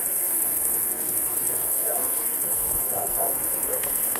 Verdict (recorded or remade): remade